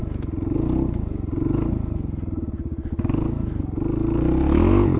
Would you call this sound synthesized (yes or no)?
no